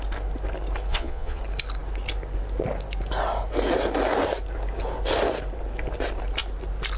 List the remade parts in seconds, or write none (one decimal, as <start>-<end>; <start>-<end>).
0.9-1.4